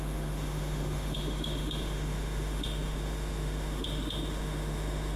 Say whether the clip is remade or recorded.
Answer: remade